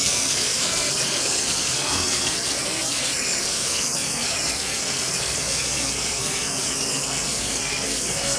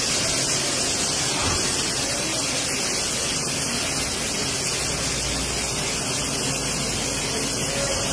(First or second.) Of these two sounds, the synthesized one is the first